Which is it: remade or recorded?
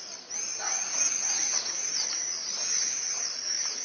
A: recorded